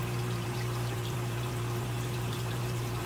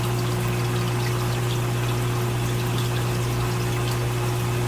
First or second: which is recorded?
second